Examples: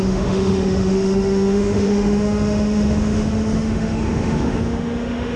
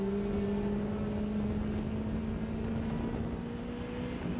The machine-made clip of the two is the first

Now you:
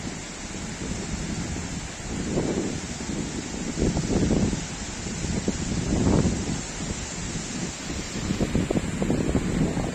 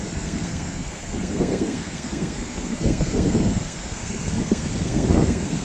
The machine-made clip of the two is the second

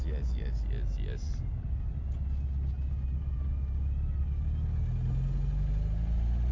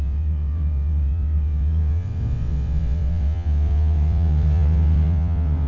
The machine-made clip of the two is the second